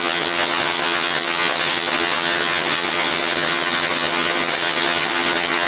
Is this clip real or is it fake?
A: fake